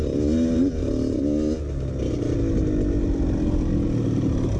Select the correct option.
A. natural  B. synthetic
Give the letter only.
A